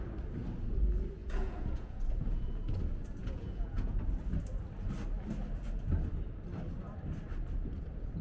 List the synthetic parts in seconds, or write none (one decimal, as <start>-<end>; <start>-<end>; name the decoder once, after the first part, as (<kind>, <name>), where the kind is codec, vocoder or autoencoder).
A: 1.2-2.7 (vocoder, Vocos); 3.2-4.0